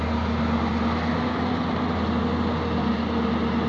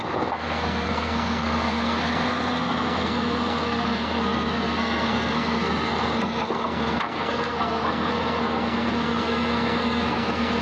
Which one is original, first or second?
first